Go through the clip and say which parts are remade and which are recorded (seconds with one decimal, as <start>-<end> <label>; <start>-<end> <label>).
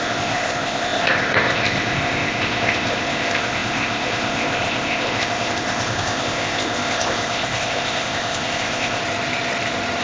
0.0-9.0 remade; 9.0-10.0 recorded